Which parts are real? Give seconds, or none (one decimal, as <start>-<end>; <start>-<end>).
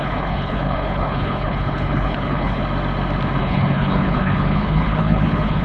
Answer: 2.6-3.4